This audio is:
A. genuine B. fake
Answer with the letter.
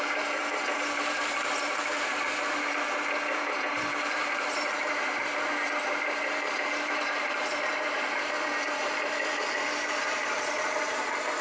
B